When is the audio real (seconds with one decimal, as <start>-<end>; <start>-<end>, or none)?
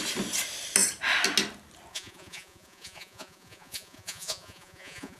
0.0-1.9